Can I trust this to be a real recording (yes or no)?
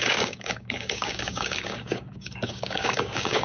no